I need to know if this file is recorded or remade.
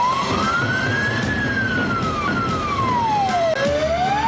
recorded